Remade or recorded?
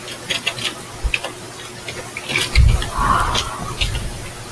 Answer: recorded